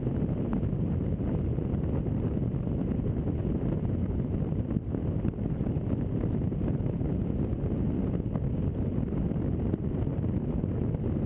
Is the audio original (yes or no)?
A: yes